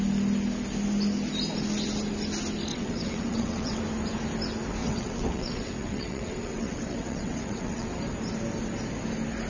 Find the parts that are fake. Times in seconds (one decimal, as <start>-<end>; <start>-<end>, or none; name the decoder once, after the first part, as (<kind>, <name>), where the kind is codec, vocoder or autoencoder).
2.7-3.8 (vocoder, WaveNeXt); 4.8-8.0